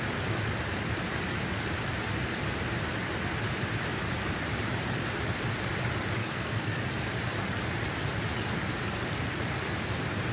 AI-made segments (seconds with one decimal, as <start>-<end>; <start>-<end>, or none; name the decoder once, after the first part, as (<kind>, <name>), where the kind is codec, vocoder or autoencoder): 6.2-6.8 (codec, SNAC)